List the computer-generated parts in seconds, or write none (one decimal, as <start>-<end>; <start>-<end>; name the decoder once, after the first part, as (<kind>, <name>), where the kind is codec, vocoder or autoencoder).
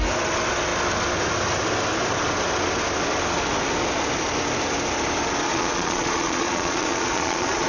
5.5-7.7 (vocoder, Vocos)